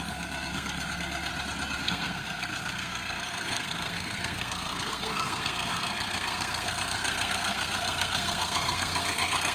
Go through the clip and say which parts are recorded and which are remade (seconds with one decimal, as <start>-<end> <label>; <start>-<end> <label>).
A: 0.0-1.3 remade; 1.3-1.8 recorded; 1.8-9.5 remade